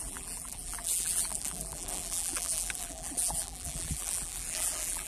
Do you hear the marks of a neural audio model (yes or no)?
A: yes